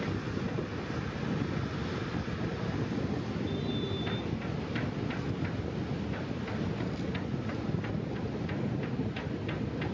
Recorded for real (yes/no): yes